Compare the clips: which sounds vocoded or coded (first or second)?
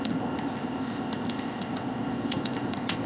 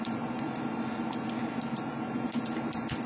first